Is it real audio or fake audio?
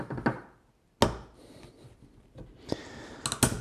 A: real